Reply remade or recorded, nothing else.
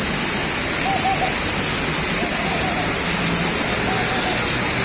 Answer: recorded